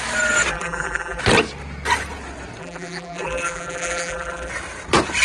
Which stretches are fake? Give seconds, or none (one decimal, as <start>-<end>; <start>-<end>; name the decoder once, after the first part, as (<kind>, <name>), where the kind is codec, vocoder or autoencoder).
0.5-1.2 (vocoder, BigVGAN v2); 2.6-4.5